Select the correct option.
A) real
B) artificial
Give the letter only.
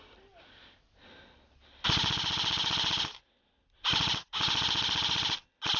A